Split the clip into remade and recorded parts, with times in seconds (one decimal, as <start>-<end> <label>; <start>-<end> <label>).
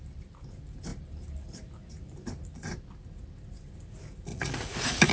0.0-4.3 recorded; 4.3-5.1 remade